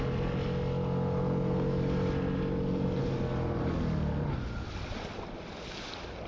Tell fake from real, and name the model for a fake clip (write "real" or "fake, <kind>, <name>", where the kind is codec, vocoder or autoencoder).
real